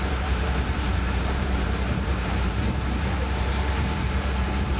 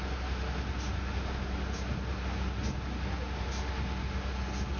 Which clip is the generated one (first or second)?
first